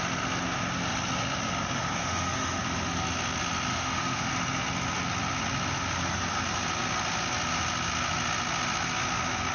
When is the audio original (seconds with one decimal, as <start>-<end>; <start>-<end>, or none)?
0.0-2.0; 2.6-3.7; 4.3-9.5